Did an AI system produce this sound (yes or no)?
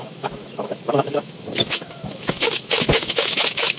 yes